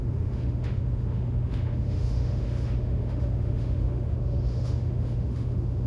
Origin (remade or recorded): remade